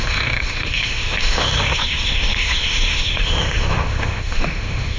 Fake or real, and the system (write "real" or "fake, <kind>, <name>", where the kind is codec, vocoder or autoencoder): fake, autoencoder, DAC-VAE